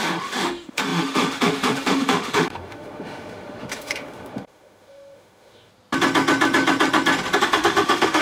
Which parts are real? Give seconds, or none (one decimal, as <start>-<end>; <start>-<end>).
5.7-7.4